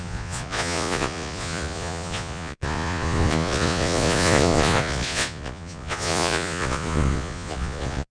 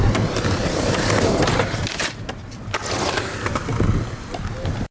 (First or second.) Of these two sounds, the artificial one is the first